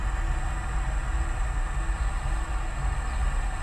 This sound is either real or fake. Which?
real